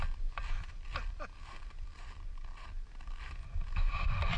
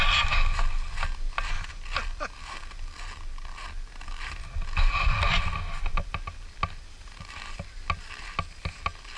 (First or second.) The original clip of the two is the second